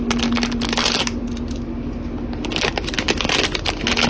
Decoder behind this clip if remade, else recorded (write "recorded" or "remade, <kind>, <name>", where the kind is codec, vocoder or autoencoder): recorded